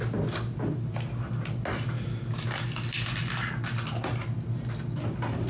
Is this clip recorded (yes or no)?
yes